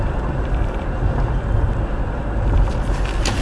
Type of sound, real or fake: real